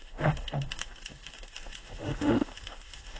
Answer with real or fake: fake